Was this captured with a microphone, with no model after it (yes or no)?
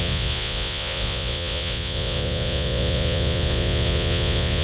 no